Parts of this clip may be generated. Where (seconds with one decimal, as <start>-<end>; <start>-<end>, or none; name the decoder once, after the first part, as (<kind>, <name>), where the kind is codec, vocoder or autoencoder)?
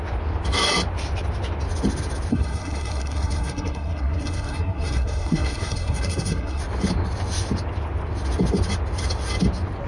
2.3-6.6 (codec, SNAC)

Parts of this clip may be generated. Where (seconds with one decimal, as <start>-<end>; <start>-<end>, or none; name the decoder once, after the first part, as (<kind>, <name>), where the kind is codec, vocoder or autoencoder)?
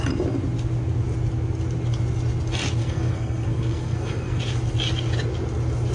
2.8-4.4 (codec, SNAC)